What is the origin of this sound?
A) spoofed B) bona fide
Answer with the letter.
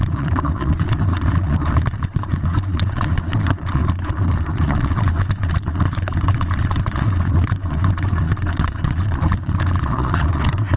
A